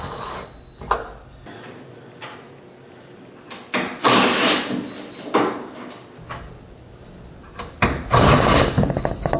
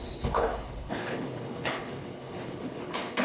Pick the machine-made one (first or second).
second